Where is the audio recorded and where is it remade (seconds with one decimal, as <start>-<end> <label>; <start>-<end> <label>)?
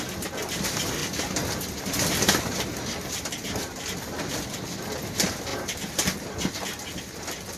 0.0-7.6 recorded